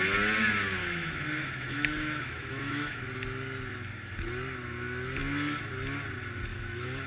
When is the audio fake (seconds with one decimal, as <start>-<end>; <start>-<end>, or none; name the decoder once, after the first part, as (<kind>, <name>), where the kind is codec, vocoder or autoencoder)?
0.8-3.0 (autoencoder, DAC-VAE); 6.5-7.1